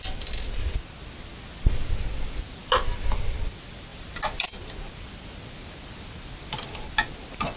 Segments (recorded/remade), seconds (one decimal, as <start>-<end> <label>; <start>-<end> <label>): 0.0-7.6 recorded